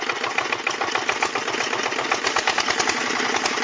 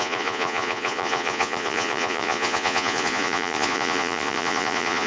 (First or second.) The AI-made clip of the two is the second